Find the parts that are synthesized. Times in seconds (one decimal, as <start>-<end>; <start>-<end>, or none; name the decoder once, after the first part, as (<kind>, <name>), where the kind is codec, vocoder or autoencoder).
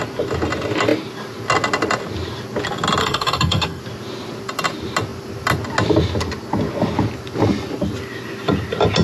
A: 3.0-3.8 (codec, SNAC)